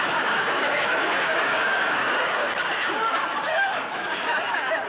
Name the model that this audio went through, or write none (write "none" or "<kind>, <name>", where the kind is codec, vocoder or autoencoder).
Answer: codec, DAC